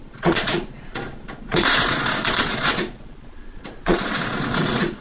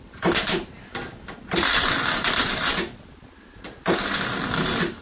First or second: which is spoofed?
first